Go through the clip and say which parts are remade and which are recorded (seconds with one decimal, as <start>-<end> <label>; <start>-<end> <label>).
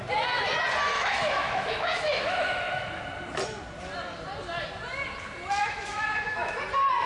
0.0-0.9 recorded; 0.9-3.0 remade; 3.0-5.6 recorded; 5.6-6.6 remade; 6.6-7.1 recorded